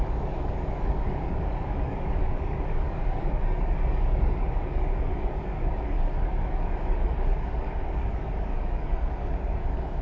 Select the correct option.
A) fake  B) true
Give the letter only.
A